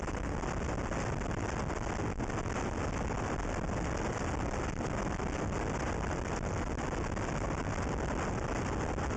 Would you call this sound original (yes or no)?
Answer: yes